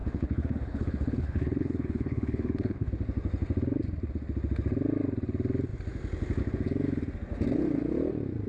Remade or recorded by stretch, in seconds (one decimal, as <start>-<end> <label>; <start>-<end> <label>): 0.0-2.9 remade; 2.9-8.5 recorded